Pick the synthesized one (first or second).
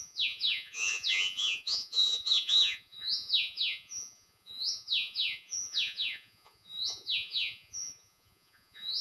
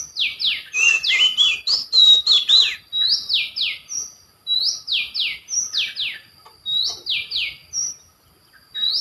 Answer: first